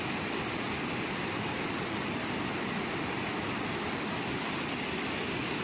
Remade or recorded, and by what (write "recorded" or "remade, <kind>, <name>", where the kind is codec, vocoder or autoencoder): remade, vocoder, BigVGAN v2